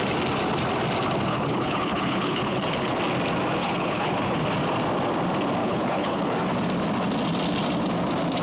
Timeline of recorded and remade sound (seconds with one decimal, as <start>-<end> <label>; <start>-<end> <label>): 0.0-1.3 recorded; 1.3-3.0 remade; 3.0-3.6 recorded; 3.6-4.4 remade; 4.4-5.6 recorded; 5.6-6.2 remade; 6.2-8.4 recorded